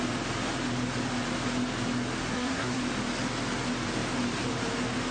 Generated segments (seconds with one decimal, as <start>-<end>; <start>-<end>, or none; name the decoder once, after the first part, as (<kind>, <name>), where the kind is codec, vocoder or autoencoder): 2.2-2.8 (codec, SNAC)